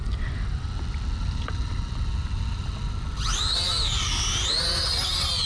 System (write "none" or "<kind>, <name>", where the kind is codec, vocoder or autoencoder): none